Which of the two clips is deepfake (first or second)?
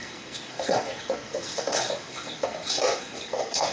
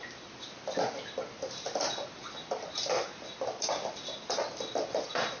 first